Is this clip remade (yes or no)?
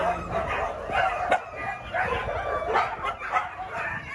no